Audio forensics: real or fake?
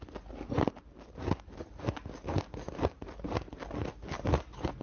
real